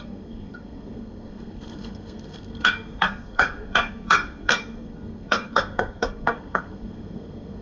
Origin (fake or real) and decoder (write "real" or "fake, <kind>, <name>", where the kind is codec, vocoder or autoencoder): fake, codec, SNAC